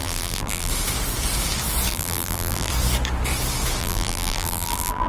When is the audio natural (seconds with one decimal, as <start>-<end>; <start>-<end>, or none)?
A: 0.7-1.9; 2.7-3.8